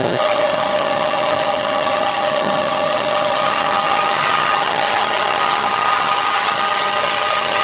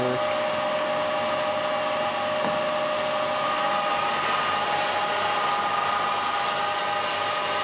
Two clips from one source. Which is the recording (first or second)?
second